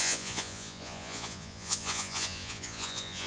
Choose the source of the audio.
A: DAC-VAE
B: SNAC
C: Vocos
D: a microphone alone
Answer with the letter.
C